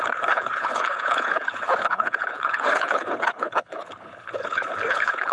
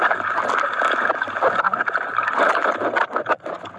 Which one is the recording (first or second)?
second